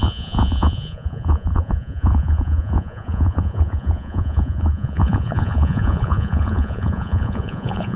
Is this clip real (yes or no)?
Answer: no